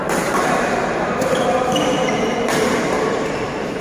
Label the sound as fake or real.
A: fake